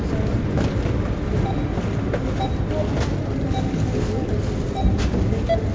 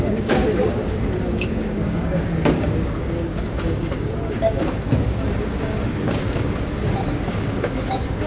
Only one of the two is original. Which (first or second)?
first